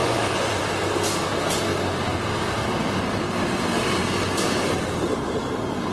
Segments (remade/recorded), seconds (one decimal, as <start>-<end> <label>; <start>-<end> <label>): 0.0-0.6 remade; 0.6-5.9 recorded